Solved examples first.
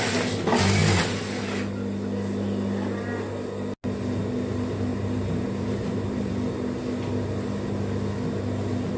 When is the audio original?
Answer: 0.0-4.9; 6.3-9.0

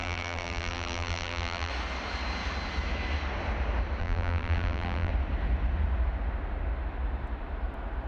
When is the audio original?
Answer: 1.7-4.0; 5.1-8.1